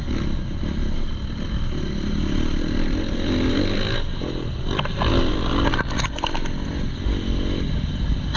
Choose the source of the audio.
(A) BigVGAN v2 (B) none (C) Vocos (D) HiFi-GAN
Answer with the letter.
B